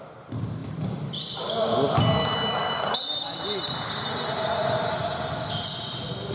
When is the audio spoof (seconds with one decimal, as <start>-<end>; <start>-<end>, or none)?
0.6-1.4; 2.6-5.0